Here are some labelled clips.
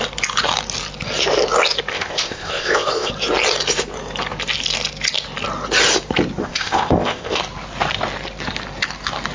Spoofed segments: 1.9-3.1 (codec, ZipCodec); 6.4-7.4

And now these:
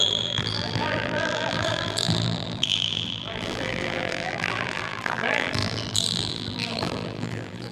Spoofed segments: 0.0-7.7 (vocoder, BigVGAN v2)

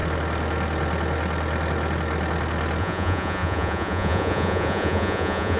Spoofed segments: 2.8-5.6 (vocoder, Vocos)

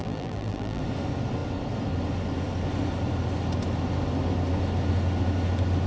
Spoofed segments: 0.0-0.8 (vocoder, BigVGAN v2)

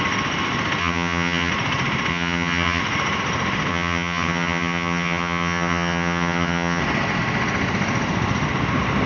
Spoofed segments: 0.8-1.5 (vocoder, HiFi-GAN); 2.1-2.8; 3.7-6.8

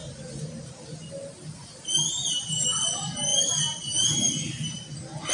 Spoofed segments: none